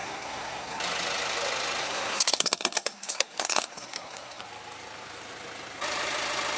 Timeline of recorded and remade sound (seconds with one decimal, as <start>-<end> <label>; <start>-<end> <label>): 0.0-0.8 remade; 0.8-1.8 recorded; 1.8-4.4 remade; 4.4-6.6 recorded